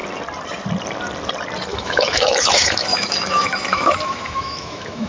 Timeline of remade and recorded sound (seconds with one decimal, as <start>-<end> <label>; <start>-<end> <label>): 0.0-1.7 recorded; 1.7-5.1 remade